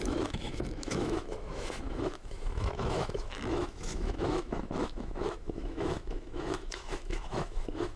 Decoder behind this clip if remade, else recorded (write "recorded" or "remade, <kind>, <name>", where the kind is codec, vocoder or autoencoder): remade, autoencoder, DAC-VAE